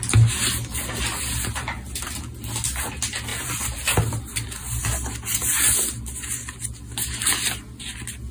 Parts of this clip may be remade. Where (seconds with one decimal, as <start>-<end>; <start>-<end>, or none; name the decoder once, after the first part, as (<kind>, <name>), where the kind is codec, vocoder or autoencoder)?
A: 3.3-4.8 (vocoder, BigVGAN v2)